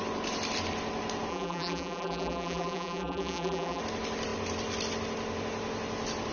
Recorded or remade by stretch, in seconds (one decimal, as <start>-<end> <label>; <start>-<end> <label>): 0.0-1.3 recorded; 1.3-3.8 remade; 3.8-6.3 recorded